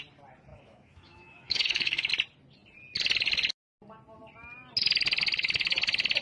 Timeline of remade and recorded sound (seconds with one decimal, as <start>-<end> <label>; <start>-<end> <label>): 0.0-0.5 recorded; 0.5-2.1 remade; 2.1-6.2 recorded